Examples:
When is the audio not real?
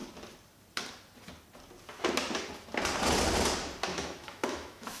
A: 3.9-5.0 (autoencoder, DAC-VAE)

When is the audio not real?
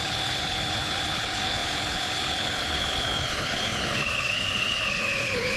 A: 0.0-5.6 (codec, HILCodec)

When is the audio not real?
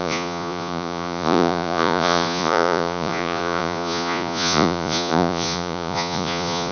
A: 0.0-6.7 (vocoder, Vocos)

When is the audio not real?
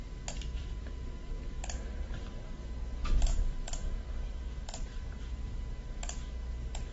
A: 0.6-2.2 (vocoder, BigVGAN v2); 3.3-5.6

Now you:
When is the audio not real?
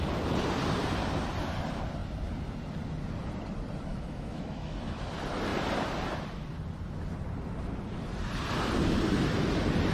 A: 3.9-5.0 (autoencoder, DAC-VAE)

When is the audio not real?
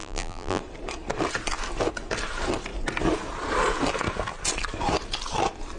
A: 0.0-0.6 (vocoder, BigVGAN v2)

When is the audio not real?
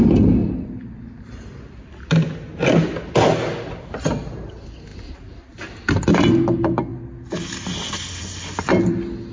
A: none